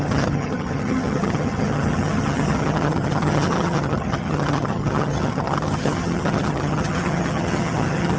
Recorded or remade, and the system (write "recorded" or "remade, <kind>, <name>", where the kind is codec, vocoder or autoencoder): remade, vocoder, HiFi-GAN